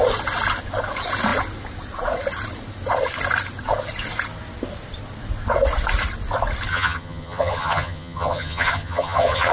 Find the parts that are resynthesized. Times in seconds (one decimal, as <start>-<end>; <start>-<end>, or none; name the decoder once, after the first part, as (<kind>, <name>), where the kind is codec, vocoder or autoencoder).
6.7-9.5 (vocoder, HiFi-GAN)